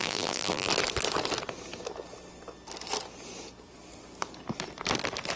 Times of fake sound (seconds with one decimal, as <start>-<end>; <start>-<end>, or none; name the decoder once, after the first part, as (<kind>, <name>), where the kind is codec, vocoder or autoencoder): 0.0-0.7 (vocoder, BigVGAN v2)